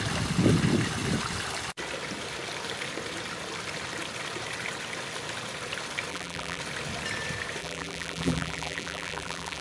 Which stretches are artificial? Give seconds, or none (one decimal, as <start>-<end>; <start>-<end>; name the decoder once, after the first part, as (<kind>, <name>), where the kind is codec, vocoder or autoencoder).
6.1-6.6 (vocoder, BigVGAN v2); 7.6-9.6